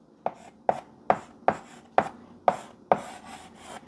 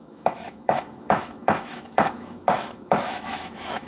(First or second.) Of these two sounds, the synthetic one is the second